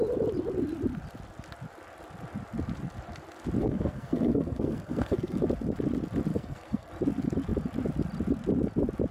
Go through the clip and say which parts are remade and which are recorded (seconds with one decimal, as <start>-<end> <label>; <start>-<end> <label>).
0.0-3.6 recorded; 3.6-5.4 remade; 5.4-6.3 recorded; 6.3-6.9 remade; 6.9-9.1 recorded